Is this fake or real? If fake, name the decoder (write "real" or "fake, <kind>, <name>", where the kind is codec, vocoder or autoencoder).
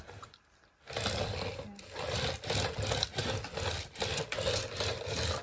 real